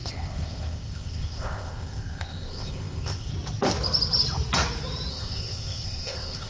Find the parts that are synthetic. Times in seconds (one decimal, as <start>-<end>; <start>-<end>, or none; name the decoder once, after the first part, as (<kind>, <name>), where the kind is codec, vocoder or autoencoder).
0.0-3.3 (codec, ZipCodec); 5.1-6.5